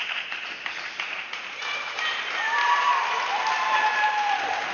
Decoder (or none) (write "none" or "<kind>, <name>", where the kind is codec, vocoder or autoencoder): vocoder, BigVGAN v2